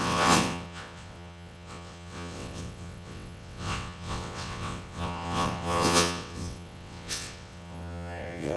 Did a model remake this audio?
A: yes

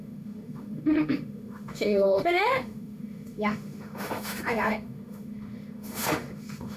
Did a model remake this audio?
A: yes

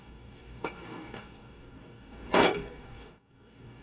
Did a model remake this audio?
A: yes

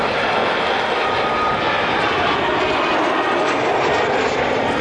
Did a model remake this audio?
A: no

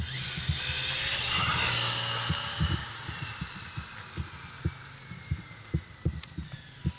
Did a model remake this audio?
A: no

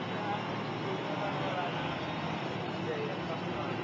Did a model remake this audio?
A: no